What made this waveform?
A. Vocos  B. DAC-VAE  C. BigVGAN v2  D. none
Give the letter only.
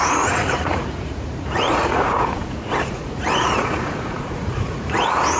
A